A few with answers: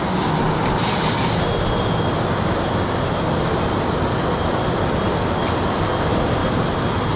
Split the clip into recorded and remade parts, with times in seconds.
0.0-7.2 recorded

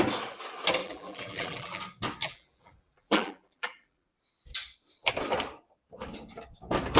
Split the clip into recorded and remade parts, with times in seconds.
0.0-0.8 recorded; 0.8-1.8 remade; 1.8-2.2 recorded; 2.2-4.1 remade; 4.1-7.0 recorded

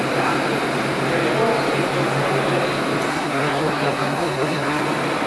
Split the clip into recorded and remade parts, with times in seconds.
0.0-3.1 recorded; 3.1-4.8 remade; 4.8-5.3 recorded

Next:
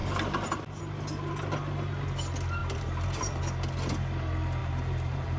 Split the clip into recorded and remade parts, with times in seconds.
0.0-2.6 recorded; 2.6-3.4 remade; 3.4-4.6 recorded; 4.6-5.4 remade